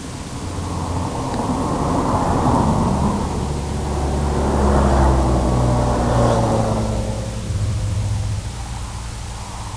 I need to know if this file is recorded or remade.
recorded